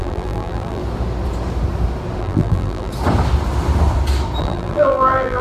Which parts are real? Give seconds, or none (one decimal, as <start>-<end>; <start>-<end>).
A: 0.8-2.2; 2.9-4.4